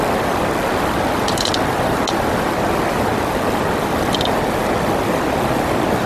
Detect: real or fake real